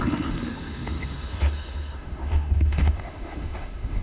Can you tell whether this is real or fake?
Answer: fake